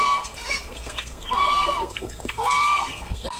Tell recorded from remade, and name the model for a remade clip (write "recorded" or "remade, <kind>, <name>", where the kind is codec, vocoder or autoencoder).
remade, codec, SNAC